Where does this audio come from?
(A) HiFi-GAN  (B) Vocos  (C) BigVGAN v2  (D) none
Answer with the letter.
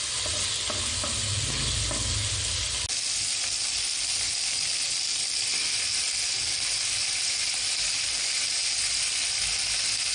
D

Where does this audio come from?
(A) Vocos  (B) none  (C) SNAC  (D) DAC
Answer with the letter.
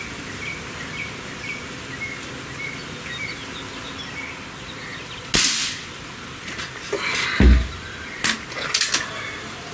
B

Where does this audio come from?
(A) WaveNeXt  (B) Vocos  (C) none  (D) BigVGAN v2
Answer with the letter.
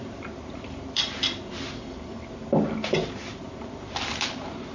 D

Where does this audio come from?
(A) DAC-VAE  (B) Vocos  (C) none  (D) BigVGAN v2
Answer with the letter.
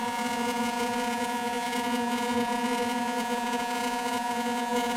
B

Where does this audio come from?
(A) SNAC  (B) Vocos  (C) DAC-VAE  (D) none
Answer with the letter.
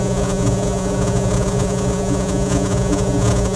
B